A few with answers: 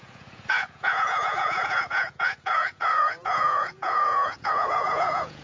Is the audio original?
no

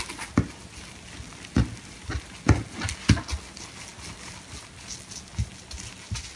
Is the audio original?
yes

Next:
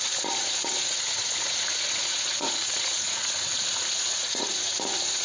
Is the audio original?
no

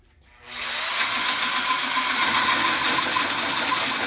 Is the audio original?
yes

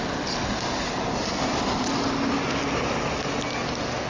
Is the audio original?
yes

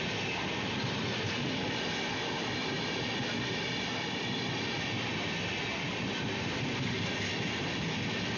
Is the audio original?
yes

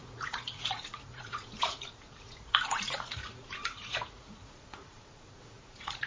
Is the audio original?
no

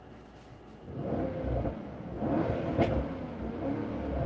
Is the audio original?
yes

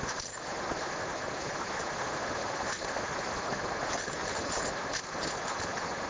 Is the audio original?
yes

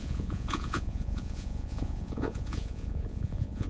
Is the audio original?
no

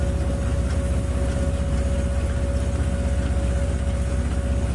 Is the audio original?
yes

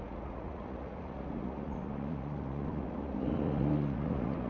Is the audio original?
no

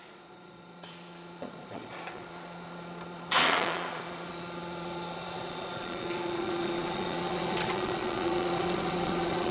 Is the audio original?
no